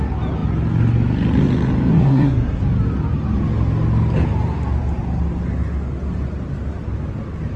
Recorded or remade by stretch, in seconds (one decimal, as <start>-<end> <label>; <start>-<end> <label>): 0.0-1.9 recorded; 1.9-2.6 remade; 2.6-7.6 recorded